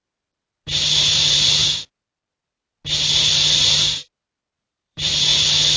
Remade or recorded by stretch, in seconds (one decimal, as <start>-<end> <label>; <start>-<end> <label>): 0.0-1.0 recorded; 1.0-1.6 remade; 1.6-4.6 recorded; 4.6-5.3 remade; 5.3-5.8 recorded